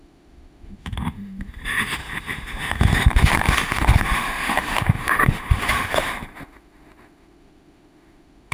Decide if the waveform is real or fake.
fake